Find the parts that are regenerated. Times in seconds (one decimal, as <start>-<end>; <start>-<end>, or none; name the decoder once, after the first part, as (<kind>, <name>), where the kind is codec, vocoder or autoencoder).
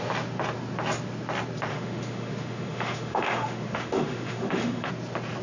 1.7-4.9 (autoencoder, DAC-VAE)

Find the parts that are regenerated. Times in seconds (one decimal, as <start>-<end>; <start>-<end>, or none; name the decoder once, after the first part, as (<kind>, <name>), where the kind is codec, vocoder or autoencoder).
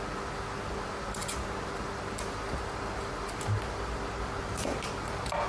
none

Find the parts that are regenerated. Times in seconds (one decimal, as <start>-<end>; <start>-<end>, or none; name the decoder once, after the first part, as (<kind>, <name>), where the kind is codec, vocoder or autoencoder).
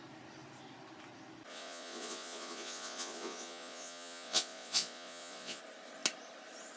1.5-5.6 (vocoder, Vocos)